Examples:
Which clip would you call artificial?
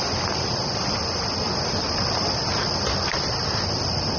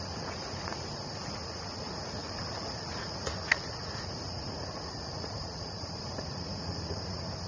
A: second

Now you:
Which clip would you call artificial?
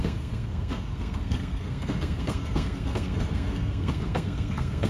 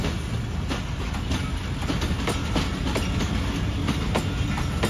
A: first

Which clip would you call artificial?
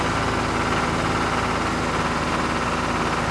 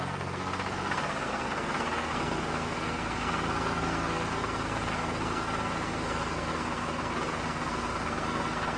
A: second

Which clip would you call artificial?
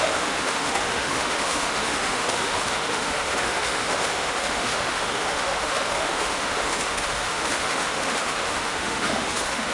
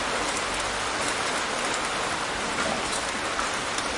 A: first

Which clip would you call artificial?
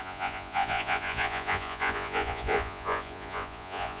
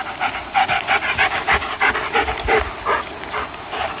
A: first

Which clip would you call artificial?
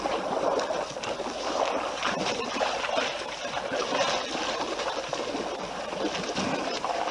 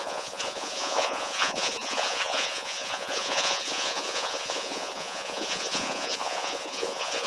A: second